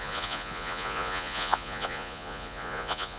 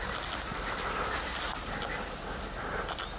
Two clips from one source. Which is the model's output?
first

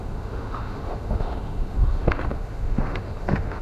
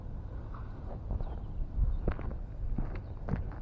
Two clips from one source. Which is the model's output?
first